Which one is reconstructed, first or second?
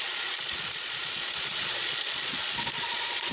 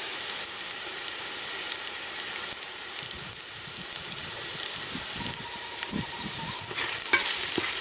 first